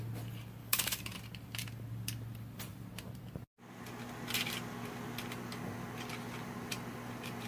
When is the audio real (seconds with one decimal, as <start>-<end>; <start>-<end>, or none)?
0.0-0.6; 1.1-7.5